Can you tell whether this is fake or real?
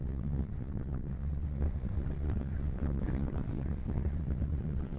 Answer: fake